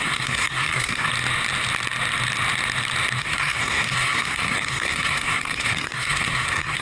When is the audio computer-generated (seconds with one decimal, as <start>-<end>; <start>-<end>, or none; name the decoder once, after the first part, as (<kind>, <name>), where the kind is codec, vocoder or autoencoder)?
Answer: 0.0-1.1 (codec, SNAC); 3.2-6.8